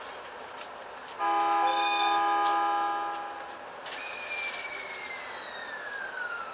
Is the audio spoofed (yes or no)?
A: no